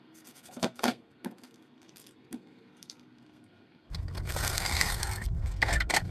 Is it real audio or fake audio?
fake